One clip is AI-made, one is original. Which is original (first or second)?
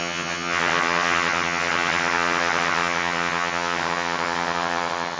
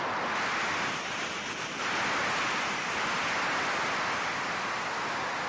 second